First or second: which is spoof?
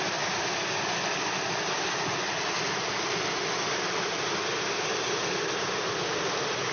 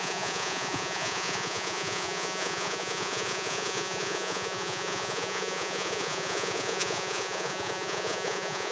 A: second